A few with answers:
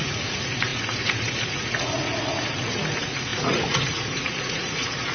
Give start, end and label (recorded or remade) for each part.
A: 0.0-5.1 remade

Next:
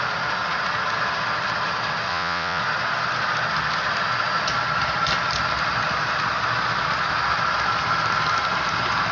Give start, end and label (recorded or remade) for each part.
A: 0.0-2.1 recorded; 2.1-2.6 remade; 2.6-9.1 recorded

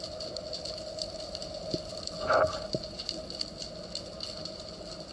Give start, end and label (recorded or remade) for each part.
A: 0.0-5.1 recorded

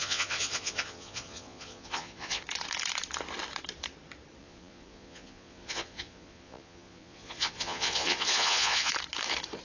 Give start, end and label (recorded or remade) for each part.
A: 0.0-2.4 remade; 2.4-4.4 recorded; 4.4-8.9 remade; 8.9-9.6 recorded

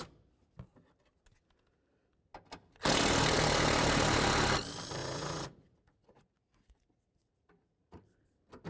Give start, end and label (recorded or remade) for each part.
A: 0.0-5.0 recorded; 5.0-8.0 remade; 8.0-8.7 recorded

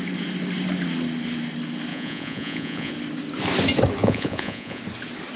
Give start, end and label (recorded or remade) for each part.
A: 0.0-1.9 recorded; 1.9-2.9 remade; 2.9-4.0 recorded; 4.0-4.8 remade; 4.8-5.4 recorded

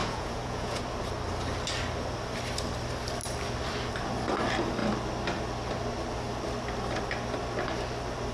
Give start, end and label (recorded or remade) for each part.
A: 0.0-0.8 remade; 0.8-8.3 recorded